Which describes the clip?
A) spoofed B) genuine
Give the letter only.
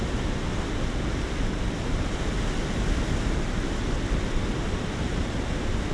B